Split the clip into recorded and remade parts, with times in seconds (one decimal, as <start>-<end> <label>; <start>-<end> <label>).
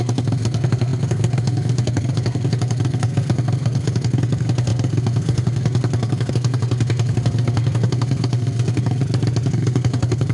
0.0-9.0 remade; 9.0-9.5 recorded; 9.5-10.3 remade